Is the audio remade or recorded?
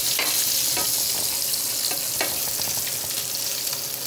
recorded